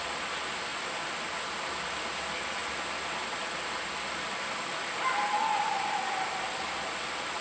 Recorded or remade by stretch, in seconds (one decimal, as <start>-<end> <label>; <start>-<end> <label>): 0.0-7.4 recorded